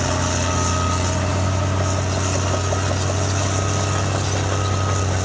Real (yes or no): yes